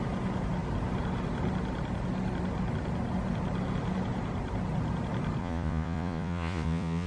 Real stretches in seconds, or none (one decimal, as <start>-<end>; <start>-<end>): 0.0-5.4